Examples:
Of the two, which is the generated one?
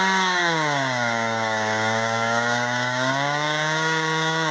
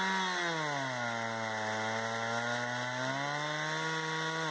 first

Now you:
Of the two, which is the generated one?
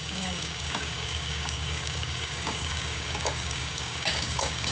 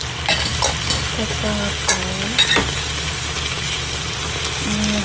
first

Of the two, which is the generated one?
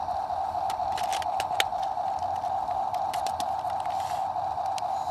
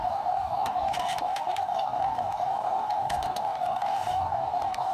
second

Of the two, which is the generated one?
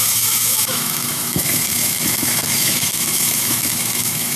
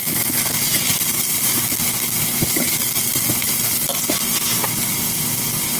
first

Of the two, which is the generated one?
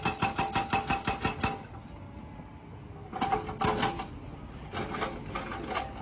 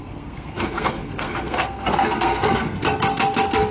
second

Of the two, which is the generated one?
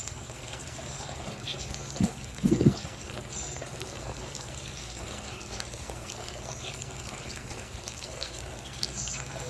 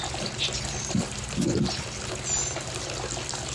first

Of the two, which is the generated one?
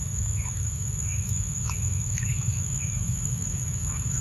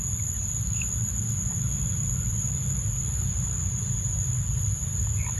first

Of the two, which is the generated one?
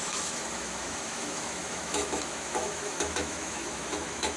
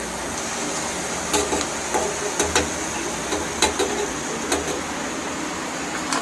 first